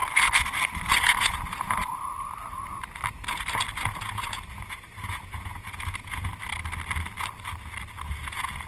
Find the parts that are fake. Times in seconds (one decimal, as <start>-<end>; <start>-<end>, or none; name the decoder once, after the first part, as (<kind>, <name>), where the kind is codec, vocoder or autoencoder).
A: 1.0-1.8 (vocoder, Vocos); 3.8-6.3; 8.1-8.7